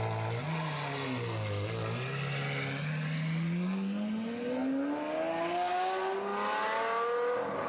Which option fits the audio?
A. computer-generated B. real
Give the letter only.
B